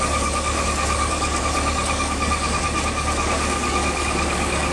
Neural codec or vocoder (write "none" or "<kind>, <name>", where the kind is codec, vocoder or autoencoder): codec, DAC